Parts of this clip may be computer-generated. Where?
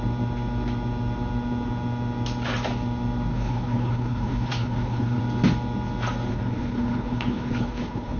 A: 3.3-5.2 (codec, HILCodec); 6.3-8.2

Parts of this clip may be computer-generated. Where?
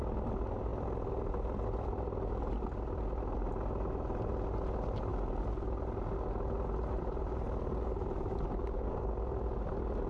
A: none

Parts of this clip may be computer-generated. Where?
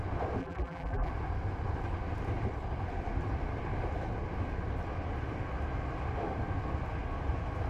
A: 0.4-1.1 (vocoder, BigVGAN v2)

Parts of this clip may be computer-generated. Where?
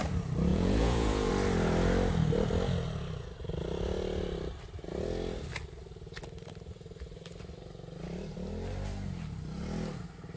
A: 0.5-1.3 (vocoder, Vocos)